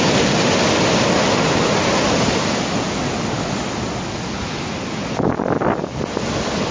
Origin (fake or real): real